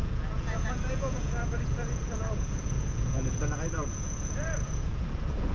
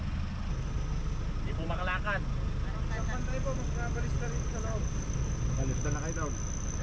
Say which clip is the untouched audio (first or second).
second